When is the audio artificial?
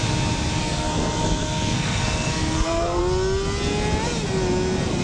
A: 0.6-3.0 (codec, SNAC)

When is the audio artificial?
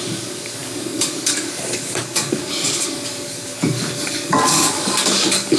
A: 0.0-5.6 (codec, DAC)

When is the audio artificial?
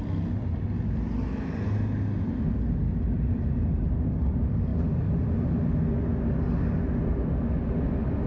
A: none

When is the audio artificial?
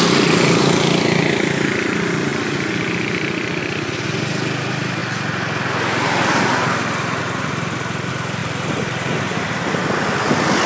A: 8.4-9.2 (vocoder, BigVGAN v2)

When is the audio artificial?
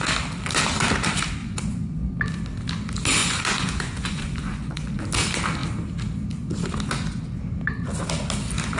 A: 1.4-2.1 (vocoder, Vocos); 3.2-5.0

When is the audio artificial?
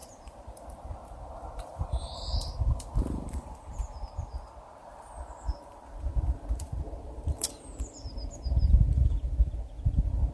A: 0.0-3.8 (vocoder, BigVGAN v2); 4.8-7.8